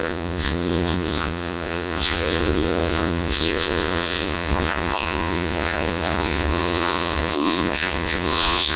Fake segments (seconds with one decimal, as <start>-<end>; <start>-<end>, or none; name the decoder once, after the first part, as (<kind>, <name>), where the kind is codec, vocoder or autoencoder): 0.0-8.8 (vocoder, Vocos)